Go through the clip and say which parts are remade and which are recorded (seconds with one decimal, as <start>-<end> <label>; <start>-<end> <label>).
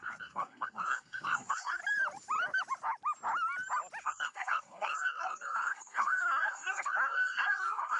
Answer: 0.0-1.8 remade; 1.8-4.0 recorded; 4.0-8.0 remade